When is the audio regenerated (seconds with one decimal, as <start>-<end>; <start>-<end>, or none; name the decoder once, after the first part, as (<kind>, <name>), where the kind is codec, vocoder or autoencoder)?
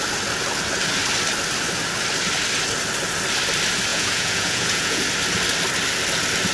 3.9-5.0 (vocoder, Vocos)